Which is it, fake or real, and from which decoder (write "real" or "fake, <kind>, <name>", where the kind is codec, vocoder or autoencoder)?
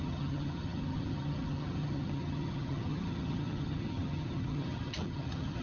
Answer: fake, vocoder, HiFi-GAN